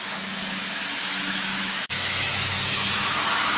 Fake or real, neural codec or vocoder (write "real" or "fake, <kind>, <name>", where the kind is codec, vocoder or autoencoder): fake, autoencoder, DAC-VAE